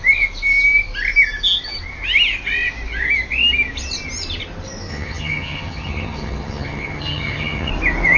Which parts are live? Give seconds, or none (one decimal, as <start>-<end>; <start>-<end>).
0.0-4.9; 7.7-8.2